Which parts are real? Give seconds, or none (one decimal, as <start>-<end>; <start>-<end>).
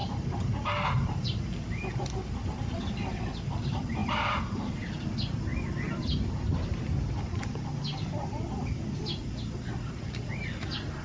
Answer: 5.5-7.2